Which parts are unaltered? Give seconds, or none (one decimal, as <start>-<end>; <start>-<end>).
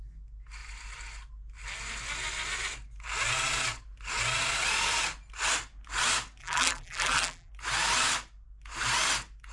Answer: 0.0-6.4; 7.5-9.5